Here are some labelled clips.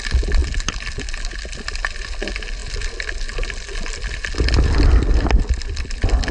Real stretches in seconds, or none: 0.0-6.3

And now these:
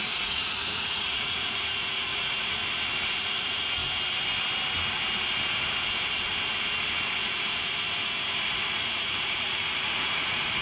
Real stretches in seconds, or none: 2.6-3.2; 3.8-8.4

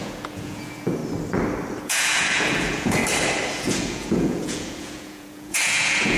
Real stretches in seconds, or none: 1.0-1.8; 3.0-3.5

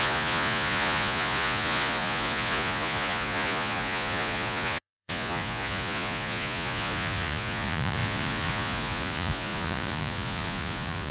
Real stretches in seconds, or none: none

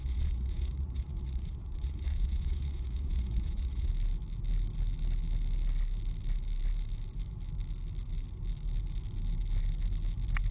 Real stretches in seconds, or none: 3.9-10.5

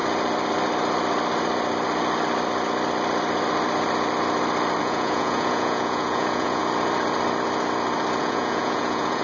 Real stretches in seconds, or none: 0.0-4.8; 6.6-8.2

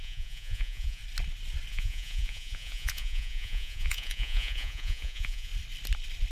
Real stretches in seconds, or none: 1.0-1.7; 5.5-6.3